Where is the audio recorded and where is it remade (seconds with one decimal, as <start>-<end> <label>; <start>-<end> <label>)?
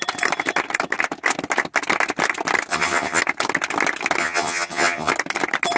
0.0-2.7 recorded; 2.7-3.2 remade; 3.2-4.2 recorded; 4.2-5.1 remade; 5.1-5.8 recorded